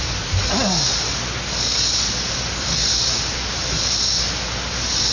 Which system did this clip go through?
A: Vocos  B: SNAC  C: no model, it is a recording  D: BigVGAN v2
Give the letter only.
C